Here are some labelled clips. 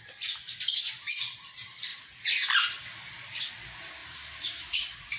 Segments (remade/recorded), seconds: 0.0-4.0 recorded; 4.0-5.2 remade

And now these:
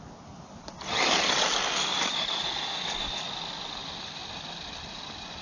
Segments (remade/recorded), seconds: 0.0-5.4 recorded

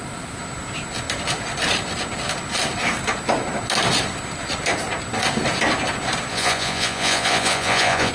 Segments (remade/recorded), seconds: 0.0-6.3 recorded; 6.3-8.1 remade

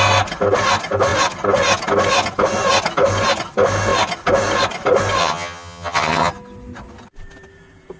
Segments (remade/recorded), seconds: 0.0-5.2 recorded; 5.2-6.3 remade; 6.3-8.0 recorded

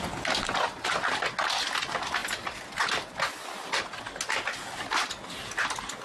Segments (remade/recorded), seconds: 0.0-6.0 recorded

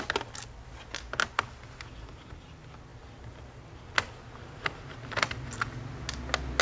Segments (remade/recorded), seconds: 0.0-6.6 recorded